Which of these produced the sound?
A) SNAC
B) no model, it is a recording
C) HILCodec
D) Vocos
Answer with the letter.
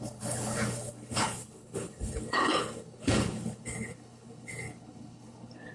C